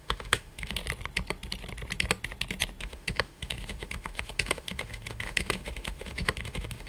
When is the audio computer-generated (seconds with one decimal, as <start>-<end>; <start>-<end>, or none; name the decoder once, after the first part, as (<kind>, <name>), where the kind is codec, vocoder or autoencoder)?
0.0-0.8 (autoencoder, DAC-VAE); 2.8-6.9